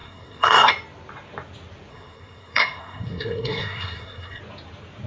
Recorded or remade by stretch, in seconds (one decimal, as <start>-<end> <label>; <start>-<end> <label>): 0.0-0.7 remade; 0.7-1.9 recorded; 1.9-4.4 remade; 4.4-5.1 recorded